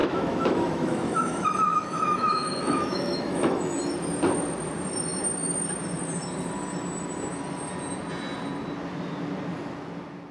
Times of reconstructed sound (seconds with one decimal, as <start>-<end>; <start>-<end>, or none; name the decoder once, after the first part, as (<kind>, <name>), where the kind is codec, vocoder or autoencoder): 0.0-3.8 (autoencoder, DAC-VAE)